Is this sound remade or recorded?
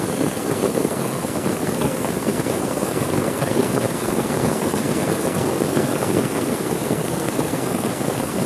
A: remade